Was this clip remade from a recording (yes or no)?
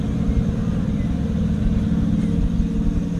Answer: no